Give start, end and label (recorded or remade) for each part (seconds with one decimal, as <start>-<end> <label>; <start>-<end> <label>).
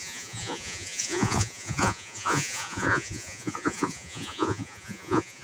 0.0-5.4 remade